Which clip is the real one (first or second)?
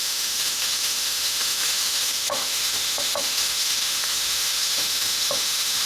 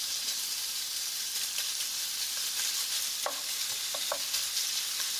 second